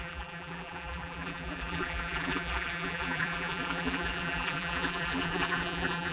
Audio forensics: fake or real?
fake